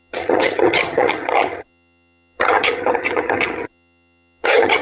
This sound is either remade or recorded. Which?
remade